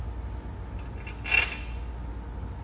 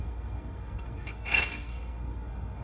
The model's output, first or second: second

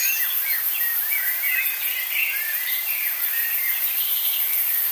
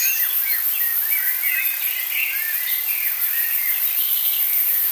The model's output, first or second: first